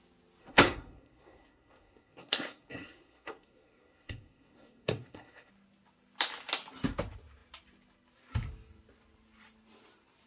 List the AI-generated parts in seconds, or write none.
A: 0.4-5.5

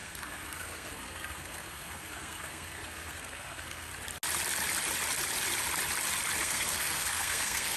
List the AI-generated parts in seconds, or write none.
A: 0.0-3.9; 6.4-7.8

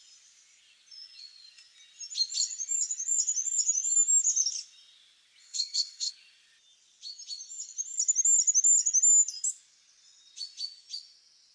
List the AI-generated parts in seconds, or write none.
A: 5.4-6.1

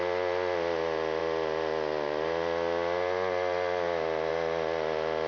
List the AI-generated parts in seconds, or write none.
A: none